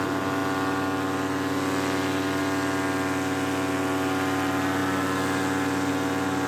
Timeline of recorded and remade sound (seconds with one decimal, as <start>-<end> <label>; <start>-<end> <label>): 0.0-6.5 recorded